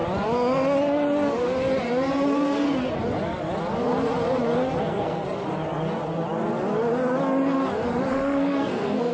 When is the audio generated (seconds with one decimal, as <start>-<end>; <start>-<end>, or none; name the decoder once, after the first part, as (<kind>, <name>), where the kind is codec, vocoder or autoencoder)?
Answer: 4.8-5.2 (codec, SNAC); 8.1-9.1